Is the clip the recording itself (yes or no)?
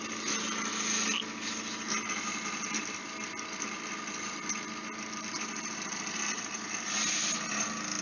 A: yes